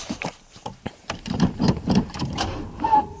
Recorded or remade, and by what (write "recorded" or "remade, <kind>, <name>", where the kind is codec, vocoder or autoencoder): remade, vocoder, BigVGAN v2